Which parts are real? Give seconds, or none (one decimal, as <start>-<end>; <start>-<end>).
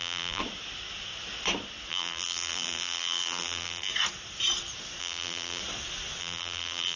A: 0.4-1.9; 3.9-5.0; 5.6-6.2